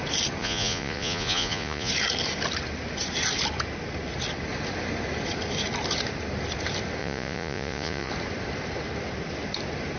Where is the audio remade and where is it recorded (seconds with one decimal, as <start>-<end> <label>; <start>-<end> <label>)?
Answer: 0.0-0.4 recorded; 0.4-1.9 remade; 1.9-7.0 recorded; 7.0-8.1 remade; 8.1-10.0 recorded